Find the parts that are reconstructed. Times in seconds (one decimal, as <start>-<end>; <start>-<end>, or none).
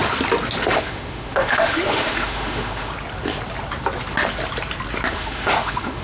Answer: 0.8-2.9; 5.1-6.0